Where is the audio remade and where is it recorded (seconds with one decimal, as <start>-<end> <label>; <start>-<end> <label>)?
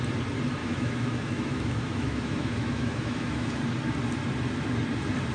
0.0-0.6 recorded; 0.6-3.6 remade; 3.6-5.3 recorded